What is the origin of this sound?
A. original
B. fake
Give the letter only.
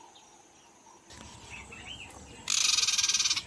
A